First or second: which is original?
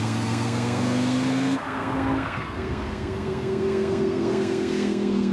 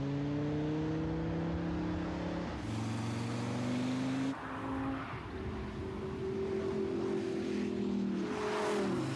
second